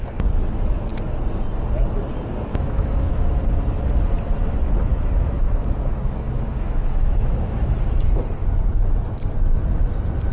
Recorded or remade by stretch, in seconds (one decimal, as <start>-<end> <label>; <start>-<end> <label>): 0.0-2.5 recorded; 2.5-3.5 remade; 3.5-4.9 recorded; 4.9-7.8 remade; 7.8-10.3 recorded